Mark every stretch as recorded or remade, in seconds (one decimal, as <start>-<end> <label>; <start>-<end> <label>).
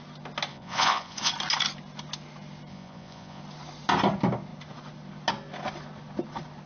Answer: 0.0-0.5 recorded; 0.5-1.3 remade; 1.3-2.7 recorded; 2.7-3.4 remade; 3.4-6.7 recorded